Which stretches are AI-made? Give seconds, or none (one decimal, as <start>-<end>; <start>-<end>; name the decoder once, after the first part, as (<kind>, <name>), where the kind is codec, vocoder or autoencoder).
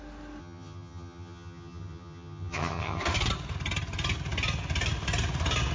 0.4-3.0 (vocoder, HiFi-GAN)